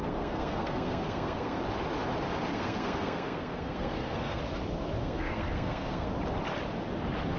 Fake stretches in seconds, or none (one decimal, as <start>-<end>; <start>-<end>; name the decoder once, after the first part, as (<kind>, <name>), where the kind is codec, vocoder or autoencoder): 0.0-1.6 (codec, SNAC); 2.5-4.4; 5.0-6.1